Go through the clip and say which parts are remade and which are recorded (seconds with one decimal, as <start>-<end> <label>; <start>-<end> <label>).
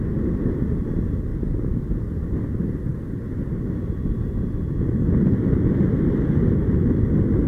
0.0-7.5 recorded